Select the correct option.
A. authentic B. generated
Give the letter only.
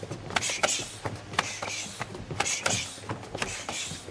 A